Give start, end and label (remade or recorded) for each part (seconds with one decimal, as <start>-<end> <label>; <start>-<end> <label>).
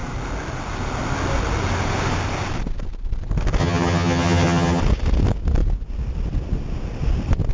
0.0-3.6 recorded; 3.6-4.8 remade; 4.8-7.5 recorded